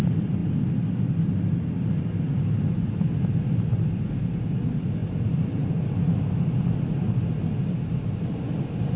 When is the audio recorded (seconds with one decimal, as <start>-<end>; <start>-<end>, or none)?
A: 0.0-5.0; 5.8-9.0